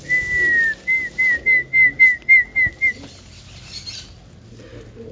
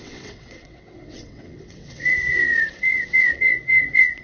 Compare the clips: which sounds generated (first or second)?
second